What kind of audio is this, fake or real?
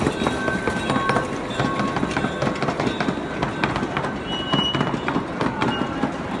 real